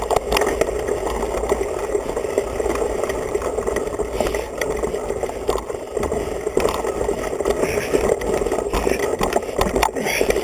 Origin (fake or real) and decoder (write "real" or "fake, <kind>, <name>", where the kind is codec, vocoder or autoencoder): real